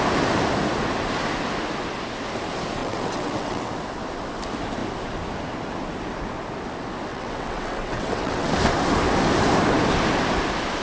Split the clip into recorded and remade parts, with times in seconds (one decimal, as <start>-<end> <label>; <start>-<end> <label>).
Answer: 0.0-2.8 recorded; 2.8-3.7 remade; 3.7-7.1 recorded; 7.1-8.5 remade; 8.5-10.8 recorded